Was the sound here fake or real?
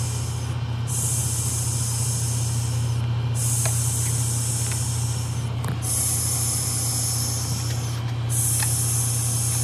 real